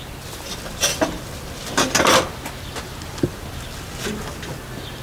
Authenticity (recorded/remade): recorded